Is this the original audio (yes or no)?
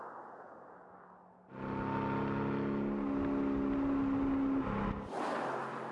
yes